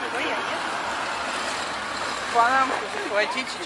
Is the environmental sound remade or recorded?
recorded